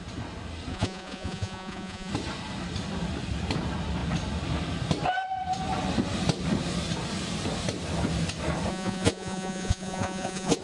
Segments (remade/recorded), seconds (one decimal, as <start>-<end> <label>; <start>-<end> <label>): 0.0-0.7 recorded; 0.7-2.1 remade; 2.1-8.7 recorded; 8.7-10.6 remade